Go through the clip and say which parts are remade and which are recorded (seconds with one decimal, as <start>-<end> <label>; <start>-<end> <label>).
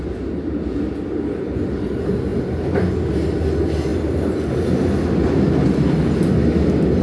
0.0-7.0 recorded